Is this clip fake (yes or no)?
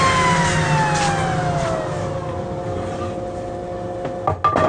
no